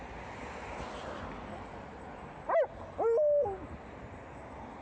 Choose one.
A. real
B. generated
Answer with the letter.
A